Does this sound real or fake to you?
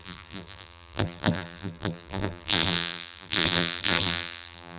fake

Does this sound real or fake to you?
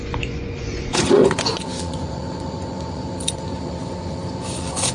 fake